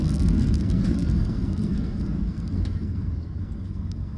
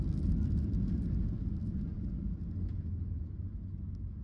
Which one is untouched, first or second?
second